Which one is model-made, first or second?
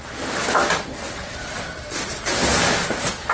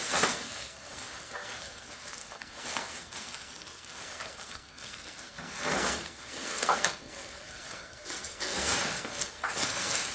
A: second